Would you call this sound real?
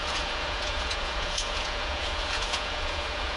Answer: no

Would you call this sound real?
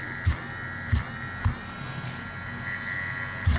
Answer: yes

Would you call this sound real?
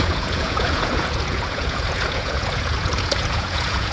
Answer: no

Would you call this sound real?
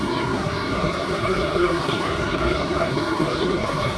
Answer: no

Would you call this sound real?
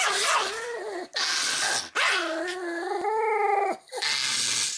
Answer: yes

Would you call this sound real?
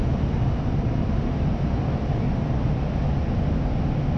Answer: yes